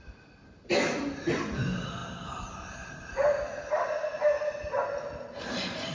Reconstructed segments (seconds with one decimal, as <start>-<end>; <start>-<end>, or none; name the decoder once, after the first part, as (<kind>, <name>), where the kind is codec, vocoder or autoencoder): none